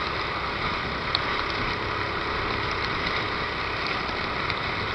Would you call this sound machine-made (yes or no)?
no